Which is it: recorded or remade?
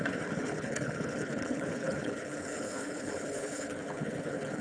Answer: remade